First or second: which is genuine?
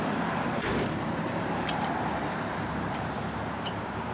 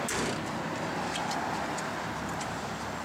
second